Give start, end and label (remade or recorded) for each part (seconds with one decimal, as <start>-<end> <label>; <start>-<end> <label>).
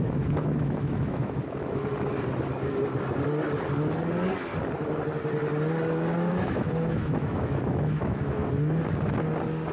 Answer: 0.0-1.9 remade; 1.9-6.3 recorded; 6.3-8.4 remade; 8.4-9.7 recorded